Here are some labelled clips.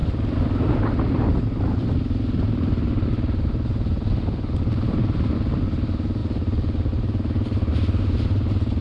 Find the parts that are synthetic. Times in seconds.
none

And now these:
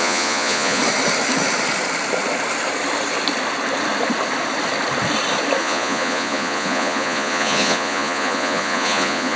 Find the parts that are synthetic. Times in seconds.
0.0-0.8 (vocoder, Vocos); 5.6-9.4

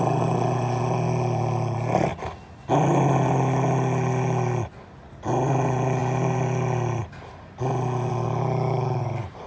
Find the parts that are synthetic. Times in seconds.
none